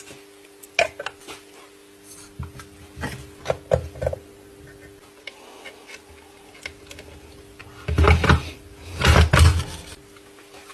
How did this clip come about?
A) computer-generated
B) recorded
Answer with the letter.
B